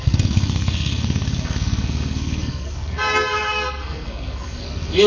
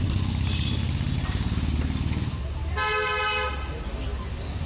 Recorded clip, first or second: second